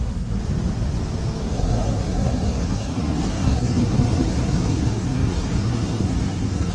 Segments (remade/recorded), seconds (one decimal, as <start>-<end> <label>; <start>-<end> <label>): 0.0-0.4 remade; 0.4-1.4 recorded; 1.4-6.7 remade